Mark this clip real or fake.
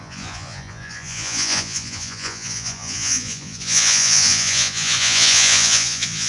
fake